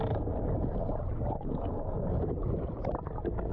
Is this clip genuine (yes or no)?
yes